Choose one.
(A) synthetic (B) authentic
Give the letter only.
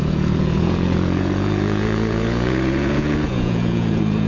A